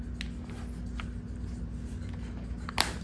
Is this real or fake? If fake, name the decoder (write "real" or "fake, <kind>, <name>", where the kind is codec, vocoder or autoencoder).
real